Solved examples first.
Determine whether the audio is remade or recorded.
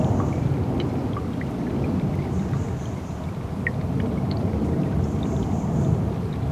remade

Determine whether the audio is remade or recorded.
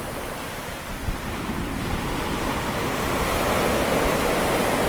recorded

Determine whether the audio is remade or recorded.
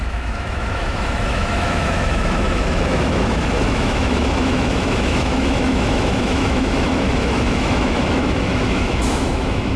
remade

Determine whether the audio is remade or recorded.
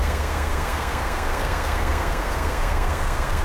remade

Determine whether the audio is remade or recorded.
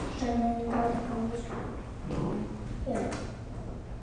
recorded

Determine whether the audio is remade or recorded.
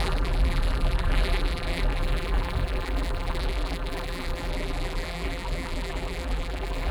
remade